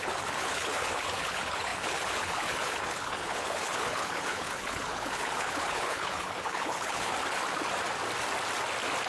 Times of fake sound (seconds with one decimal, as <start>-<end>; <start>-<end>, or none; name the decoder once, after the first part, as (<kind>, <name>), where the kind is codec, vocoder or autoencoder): 0.0-7.1 (codec, HILCodec)